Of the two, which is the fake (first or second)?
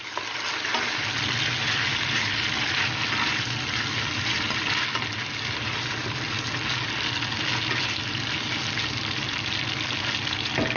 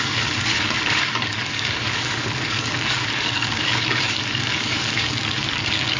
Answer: second